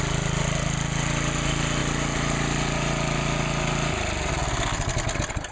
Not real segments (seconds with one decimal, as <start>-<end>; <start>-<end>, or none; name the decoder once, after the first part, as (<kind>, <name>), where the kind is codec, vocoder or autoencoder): none